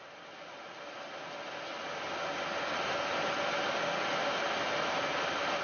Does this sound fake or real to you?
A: real